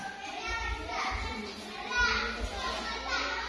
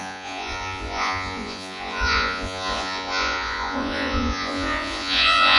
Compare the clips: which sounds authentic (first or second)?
first